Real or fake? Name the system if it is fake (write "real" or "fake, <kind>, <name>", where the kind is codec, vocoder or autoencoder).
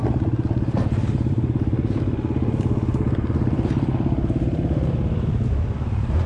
real